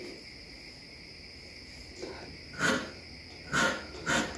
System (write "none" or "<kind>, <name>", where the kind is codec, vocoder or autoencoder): none